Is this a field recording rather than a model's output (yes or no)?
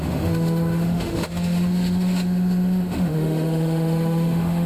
no